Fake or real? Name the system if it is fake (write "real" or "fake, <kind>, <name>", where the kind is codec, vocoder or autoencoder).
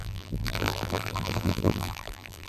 fake, vocoder, BigVGAN v2